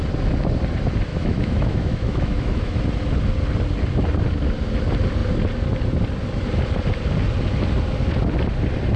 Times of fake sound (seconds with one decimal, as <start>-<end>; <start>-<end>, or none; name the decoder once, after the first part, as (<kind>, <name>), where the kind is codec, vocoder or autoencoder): 1.1-2.8 (autoencoder, DAC-VAE)